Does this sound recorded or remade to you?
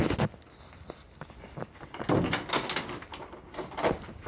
recorded